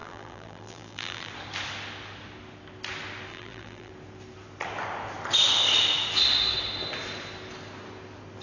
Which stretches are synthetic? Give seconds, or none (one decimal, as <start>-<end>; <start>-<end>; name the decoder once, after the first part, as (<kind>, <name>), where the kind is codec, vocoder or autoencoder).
0.0-1.3 (vocoder, BigVGAN v2); 3.3-3.9